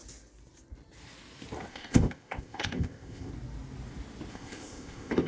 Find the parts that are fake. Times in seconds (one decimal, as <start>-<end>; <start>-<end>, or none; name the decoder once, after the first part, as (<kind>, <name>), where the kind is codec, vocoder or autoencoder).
1.7-3.3 (codec, ZipCodec); 4.3-5.3

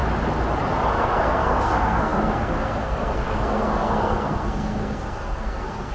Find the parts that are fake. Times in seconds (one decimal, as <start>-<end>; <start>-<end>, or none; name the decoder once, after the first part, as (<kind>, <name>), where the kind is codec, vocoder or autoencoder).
0.9-5.9 (codec, SNAC)

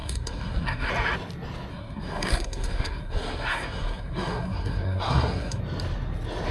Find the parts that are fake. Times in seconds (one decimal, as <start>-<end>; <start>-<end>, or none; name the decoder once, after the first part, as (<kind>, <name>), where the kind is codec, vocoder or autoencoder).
0.0-0.9 (codec, SNAC); 1.7-5.6

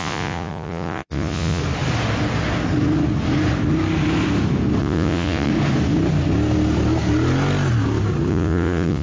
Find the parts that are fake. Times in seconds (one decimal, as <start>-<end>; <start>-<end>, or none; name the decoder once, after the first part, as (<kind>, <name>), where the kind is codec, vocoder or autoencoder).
0.0-1.6 (vocoder, Vocos); 4.8-5.5; 8.3-9.0

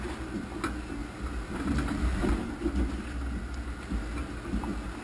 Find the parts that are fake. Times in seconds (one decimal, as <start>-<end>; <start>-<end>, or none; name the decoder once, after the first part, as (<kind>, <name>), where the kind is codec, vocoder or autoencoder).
1.0-2.3 (vocoder, BigVGAN v2)

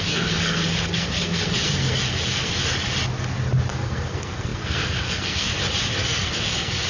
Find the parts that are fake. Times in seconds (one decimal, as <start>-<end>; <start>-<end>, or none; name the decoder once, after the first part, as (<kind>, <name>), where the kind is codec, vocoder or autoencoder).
0.0-2.5 (codec, SNAC); 3.7-5.5; 6.0-6.9